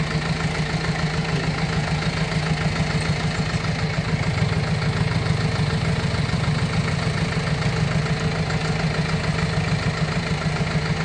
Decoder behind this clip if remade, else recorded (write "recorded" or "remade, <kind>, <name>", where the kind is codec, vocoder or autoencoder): recorded